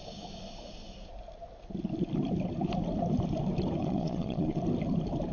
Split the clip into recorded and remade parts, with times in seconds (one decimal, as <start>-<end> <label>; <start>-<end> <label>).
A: 0.0-3.8 recorded; 3.8-4.6 remade; 4.6-5.3 recorded